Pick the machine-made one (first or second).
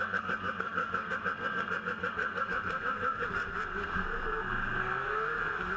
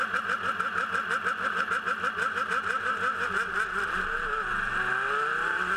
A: first